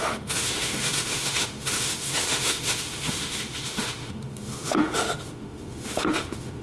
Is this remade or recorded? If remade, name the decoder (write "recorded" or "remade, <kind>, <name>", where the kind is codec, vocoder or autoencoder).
remade, autoencoder, DAC-VAE